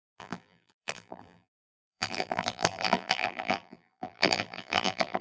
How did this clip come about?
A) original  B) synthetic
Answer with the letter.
B